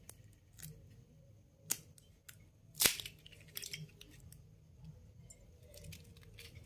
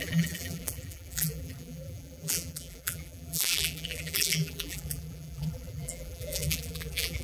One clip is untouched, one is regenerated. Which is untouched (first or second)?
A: first